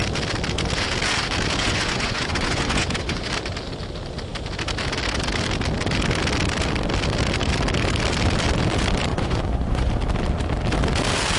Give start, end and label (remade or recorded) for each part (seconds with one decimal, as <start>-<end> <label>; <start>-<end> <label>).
0.0-1.6 recorded; 1.6-3.3 remade; 3.3-9.1 recorded; 9.1-9.9 remade; 9.9-11.4 recorded